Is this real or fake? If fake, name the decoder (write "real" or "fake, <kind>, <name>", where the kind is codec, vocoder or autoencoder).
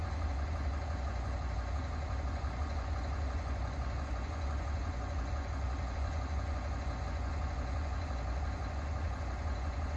fake, vocoder, Vocos